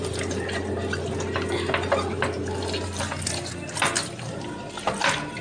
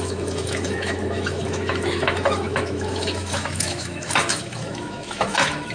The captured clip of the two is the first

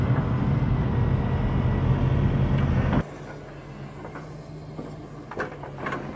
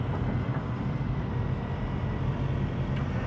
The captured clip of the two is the first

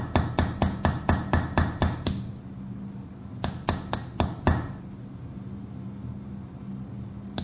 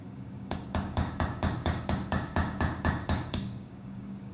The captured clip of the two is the first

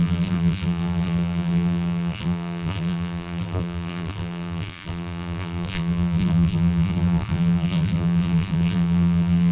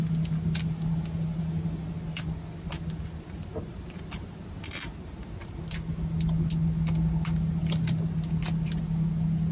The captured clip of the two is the second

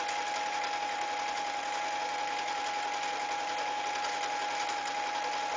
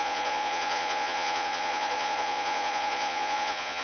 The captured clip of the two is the first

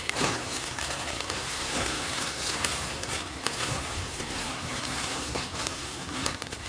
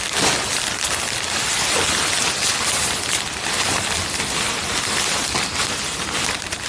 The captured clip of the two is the second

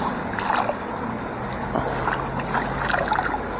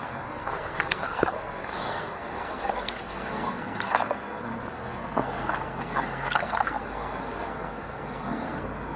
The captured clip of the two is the first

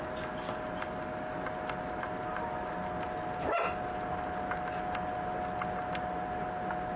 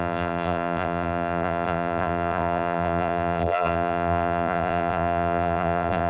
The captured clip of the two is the first